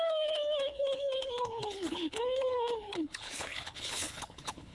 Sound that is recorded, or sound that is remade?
remade